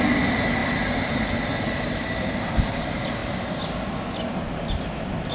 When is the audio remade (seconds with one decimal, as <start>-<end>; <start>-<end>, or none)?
none